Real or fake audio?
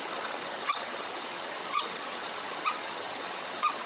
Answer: fake